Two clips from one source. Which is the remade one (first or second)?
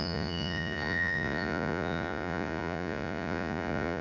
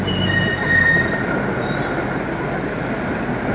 first